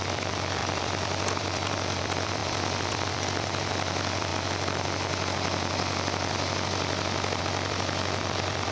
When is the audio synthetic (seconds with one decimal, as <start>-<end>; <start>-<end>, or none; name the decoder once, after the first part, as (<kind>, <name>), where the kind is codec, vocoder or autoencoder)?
0.0-4.3 (vocoder, BigVGAN v2); 7.4-8.7